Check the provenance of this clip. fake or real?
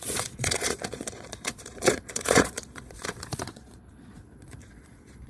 fake